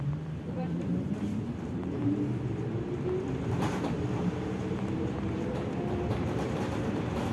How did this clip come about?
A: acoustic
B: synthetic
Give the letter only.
B